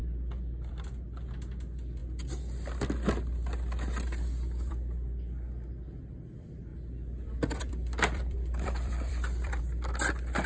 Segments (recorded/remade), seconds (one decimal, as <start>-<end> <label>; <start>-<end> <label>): 0.0-6.7 recorded; 6.7-9.6 remade; 9.6-10.5 recorded